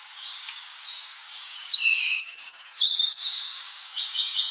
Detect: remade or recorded remade